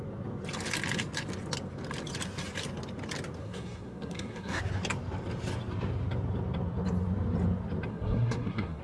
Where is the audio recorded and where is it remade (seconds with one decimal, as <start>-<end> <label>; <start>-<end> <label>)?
0.0-3.4 recorded; 3.4-4.6 remade; 4.6-7.9 recorded; 7.9-8.8 remade